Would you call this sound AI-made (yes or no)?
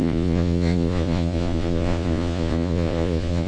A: yes